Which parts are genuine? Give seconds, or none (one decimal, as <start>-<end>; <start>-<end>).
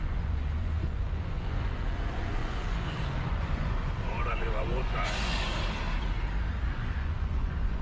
5.5-6.6